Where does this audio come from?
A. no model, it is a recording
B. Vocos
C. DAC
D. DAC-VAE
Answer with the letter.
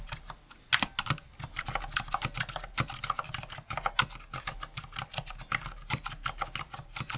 A